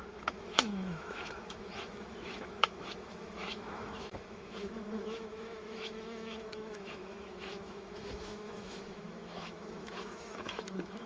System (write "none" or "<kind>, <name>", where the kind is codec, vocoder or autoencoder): autoencoder, DAC-VAE